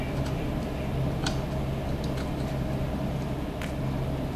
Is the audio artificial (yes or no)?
no